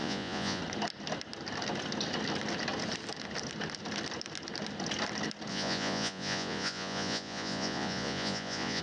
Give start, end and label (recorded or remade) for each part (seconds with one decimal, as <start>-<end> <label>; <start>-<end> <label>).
0.0-0.6 remade; 0.6-5.5 recorded; 5.5-8.8 remade